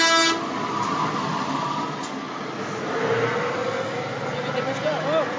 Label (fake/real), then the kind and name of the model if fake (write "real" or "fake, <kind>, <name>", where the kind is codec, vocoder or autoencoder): real